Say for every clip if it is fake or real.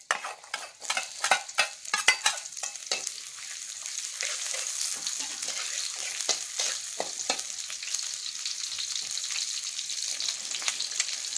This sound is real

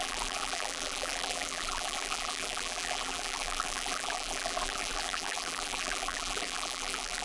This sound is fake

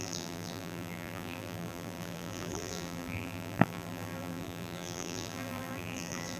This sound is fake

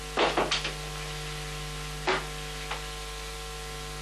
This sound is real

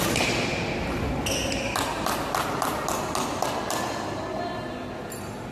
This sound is real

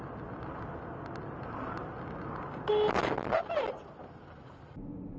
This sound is real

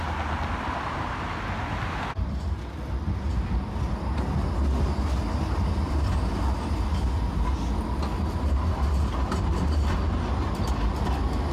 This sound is real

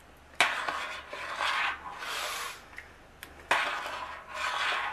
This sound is real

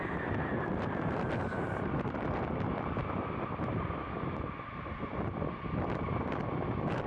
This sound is real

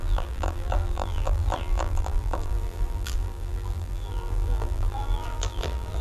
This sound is fake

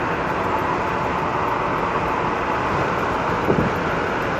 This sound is real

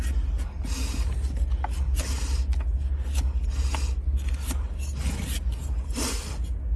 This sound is real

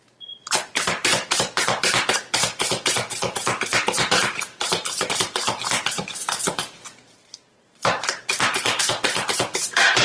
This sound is fake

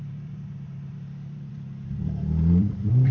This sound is fake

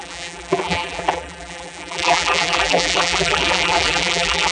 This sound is fake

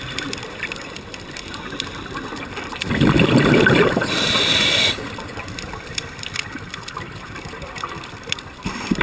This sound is fake